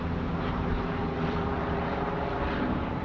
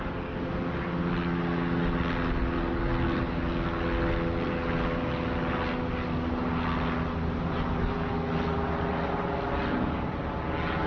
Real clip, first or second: second